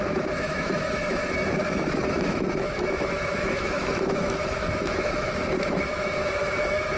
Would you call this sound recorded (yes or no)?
no